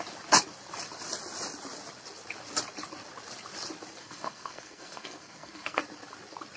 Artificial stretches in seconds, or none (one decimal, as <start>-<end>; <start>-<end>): 4.0-5.8

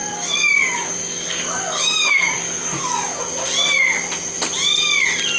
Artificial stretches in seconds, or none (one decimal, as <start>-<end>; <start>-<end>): 0.0-3.2

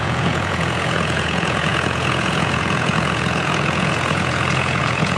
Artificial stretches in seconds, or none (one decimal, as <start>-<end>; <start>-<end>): 0.0-5.2

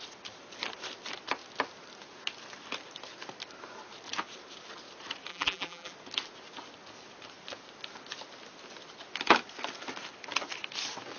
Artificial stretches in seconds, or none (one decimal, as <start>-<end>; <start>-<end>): 5.3-5.9

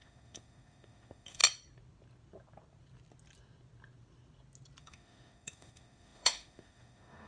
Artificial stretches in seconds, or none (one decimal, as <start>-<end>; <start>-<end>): 0.0-1.4; 4.8-7.3